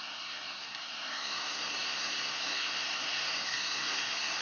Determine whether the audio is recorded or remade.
remade